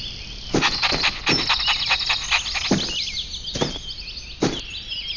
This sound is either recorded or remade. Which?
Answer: recorded